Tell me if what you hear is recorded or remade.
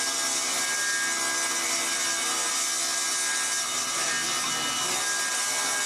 recorded